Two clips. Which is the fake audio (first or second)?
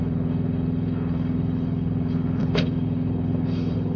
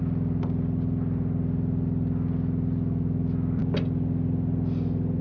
first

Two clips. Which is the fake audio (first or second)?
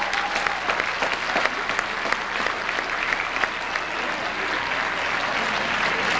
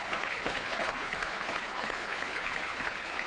second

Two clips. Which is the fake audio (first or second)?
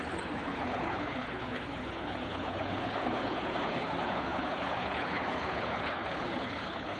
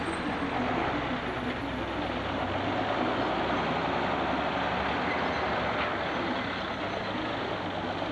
first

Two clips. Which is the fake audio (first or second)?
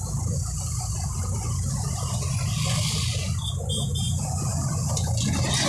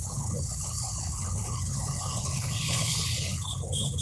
second